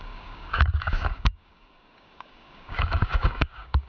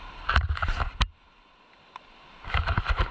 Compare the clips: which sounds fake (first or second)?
first